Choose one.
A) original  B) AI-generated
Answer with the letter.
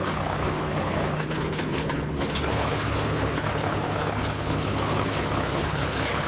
B